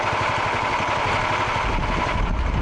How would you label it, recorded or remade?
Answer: recorded